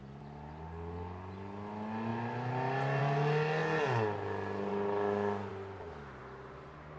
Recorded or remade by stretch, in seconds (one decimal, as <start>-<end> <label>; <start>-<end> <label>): 0.0-7.0 recorded